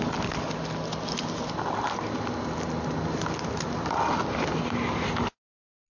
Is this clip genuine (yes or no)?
yes